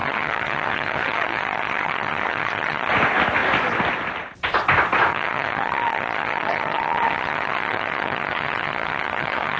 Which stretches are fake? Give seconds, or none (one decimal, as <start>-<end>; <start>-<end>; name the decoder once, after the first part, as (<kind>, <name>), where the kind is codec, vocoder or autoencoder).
0.0-2.9 (vocoder, HiFi-GAN); 5.1-9.6